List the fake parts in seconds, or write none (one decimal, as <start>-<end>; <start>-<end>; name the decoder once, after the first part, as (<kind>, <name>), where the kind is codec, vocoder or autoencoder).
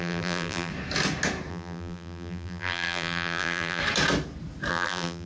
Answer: 0.0-0.7 (vocoder, BigVGAN v2); 1.5-3.8; 4.7-5.3